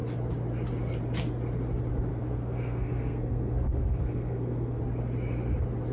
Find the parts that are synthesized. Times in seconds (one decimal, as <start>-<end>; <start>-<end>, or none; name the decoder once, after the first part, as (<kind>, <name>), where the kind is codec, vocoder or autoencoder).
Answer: 2.1-4.8 (codec, SNAC)